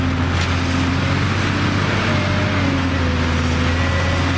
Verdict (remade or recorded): recorded